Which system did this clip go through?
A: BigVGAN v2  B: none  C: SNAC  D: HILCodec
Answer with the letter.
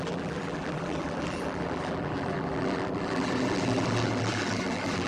A